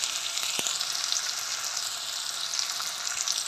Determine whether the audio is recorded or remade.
recorded